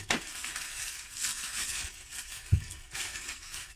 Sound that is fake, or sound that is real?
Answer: fake